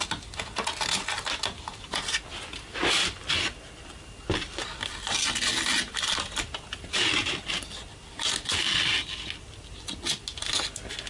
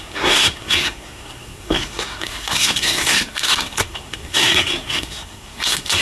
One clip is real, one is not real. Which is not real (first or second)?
second